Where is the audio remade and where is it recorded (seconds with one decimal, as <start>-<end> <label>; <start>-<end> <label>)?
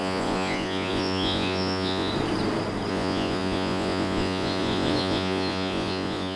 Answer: 0.0-2.1 remade; 2.1-2.9 recorded; 2.9-6.4 remade